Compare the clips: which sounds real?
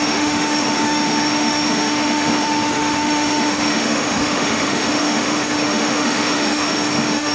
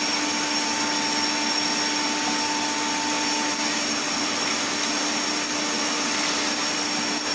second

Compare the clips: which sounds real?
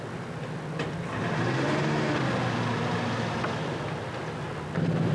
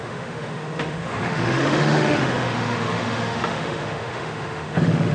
first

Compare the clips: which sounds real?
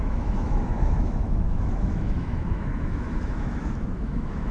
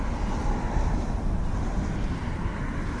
second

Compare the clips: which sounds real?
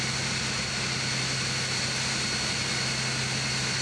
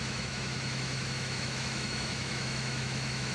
first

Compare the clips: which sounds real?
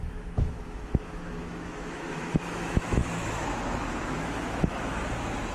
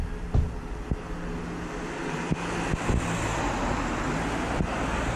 second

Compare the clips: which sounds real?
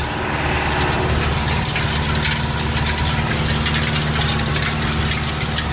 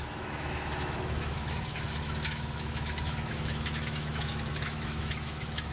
first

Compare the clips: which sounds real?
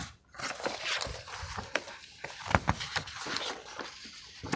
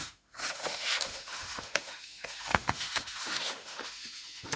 first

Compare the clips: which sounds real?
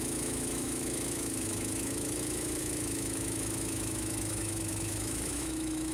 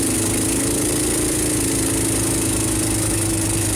second